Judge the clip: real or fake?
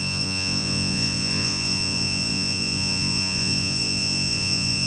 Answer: fake